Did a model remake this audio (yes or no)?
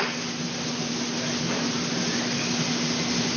no